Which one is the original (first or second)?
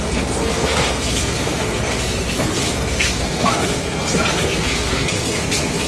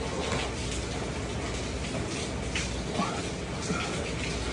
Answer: second